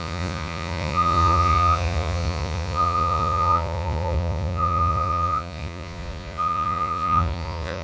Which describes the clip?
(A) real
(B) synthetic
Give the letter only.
B